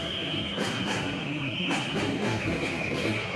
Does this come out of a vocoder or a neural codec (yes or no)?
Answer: yes